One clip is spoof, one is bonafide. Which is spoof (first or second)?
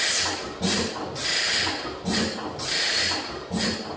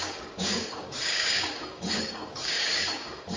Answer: second